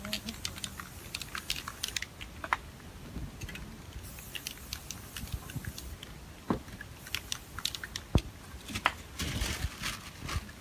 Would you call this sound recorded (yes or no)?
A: yes